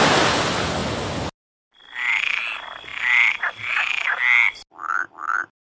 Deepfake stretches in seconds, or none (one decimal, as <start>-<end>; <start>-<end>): none